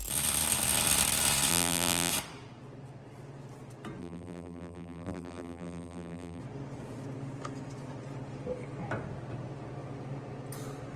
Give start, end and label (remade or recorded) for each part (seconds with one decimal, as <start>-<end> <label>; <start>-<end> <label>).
0.0-1.5 recorded; 1.5-2.1 remade; 2.1-4.0 recorded; 4.0-6.4 remade; 6.4-11.0 recorded